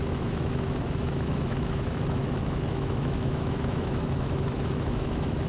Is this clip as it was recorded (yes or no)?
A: no